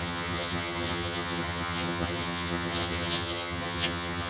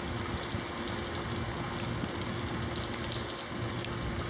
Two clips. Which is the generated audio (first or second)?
first